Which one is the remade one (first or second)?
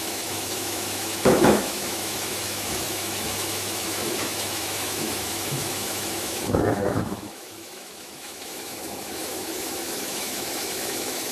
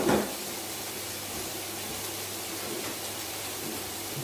first